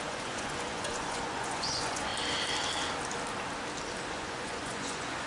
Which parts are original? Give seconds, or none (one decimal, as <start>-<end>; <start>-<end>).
2.1-4.1